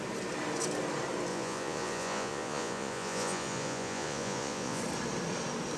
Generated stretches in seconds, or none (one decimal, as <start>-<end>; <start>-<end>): 1.3-4.8